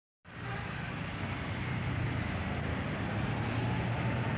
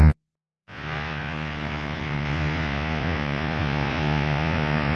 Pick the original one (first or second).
first